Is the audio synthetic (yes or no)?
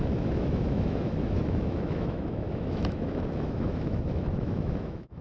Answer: yes